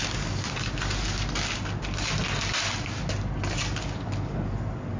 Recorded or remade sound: recorded